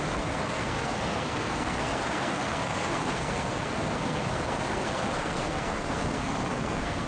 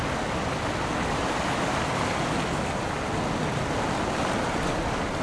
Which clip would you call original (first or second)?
second